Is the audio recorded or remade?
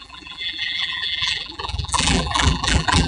remade